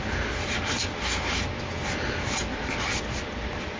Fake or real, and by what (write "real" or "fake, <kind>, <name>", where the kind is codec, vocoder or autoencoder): real